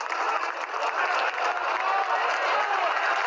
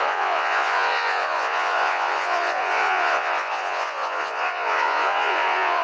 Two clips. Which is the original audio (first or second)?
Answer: first